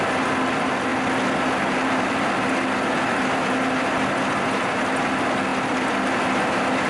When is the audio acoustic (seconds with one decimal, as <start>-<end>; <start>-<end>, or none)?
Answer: 0.0-6.9